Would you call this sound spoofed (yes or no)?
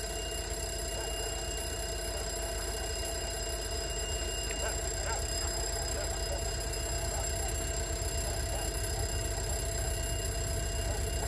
no